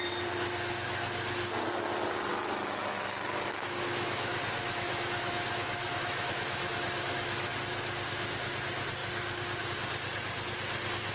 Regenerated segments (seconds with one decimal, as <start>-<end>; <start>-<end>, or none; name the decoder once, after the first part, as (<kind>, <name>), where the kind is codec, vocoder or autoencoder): 2.3-7.5 (autoencoder, DAC-VAE)